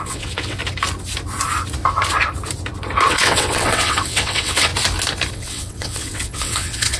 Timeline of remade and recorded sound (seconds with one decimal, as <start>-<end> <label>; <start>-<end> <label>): 0.0-0.6 remade; 0.6-3.1 recorded; 3.1-4.7 remade; 4.7-5.3 recorded; 5.3-7.0 remade